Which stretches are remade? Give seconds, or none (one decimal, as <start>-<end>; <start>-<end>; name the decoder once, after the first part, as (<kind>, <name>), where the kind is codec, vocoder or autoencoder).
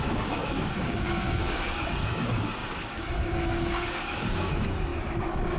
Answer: 0.0-5.6 (codec, DAC)